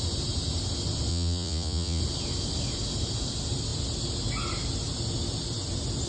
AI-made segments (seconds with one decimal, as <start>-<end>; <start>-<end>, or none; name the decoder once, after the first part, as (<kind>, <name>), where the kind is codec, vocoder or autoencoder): 1.1-2.0 (vocoder, Vocos)